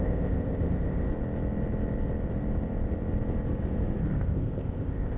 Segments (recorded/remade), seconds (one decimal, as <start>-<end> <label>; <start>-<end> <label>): 0.0-1.1 remade; 1.1-4.2 recorded; 4.2-5.2 remade